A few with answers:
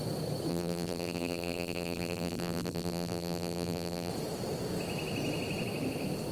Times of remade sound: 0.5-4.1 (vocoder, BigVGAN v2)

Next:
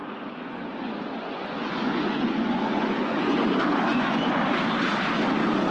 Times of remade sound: 0.0-3.4 (vocoder, Vocos); 3.9-4.4

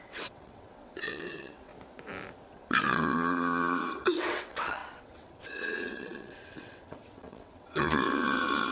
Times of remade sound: 0.0-1.7 (vocoder, WaveNeXt); 2.5-8.7

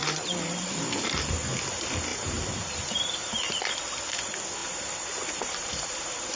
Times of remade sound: 0.0-1.3 (vocoder, BigVGAN v2); 2.1-3.6; 4.6-6.4

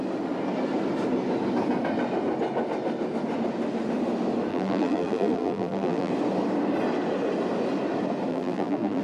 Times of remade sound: 4.5-6.1 (vocoder, BigVGAN v2); 8.3-9.0

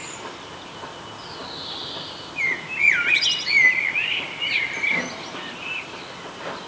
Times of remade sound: none